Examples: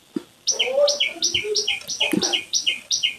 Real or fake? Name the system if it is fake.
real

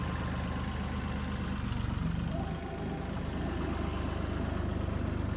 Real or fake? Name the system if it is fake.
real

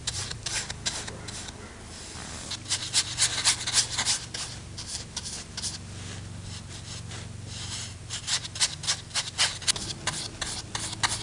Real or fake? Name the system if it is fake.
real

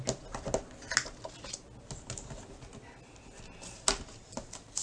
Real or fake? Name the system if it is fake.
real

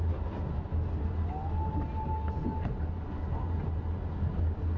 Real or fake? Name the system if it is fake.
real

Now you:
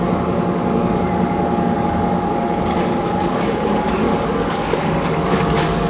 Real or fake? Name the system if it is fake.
fake, codec, DAC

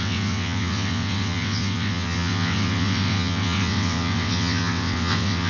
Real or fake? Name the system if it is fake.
fake, vocoder, WaveNeXt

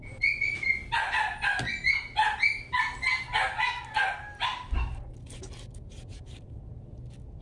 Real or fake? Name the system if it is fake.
real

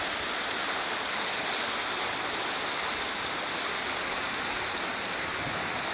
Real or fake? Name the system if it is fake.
real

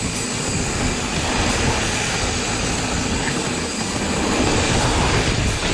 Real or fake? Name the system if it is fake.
real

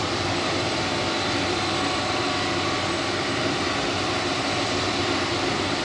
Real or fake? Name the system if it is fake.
fake, vocoder, BigVGAN v2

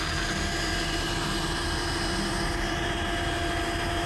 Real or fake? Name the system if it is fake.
real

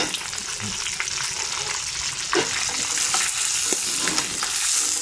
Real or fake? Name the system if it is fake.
real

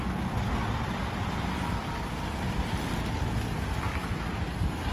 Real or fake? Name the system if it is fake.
real